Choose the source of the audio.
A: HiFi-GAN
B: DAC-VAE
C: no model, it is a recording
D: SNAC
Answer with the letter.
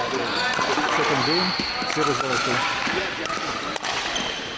C